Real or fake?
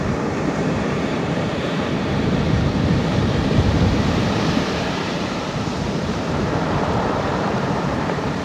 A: fake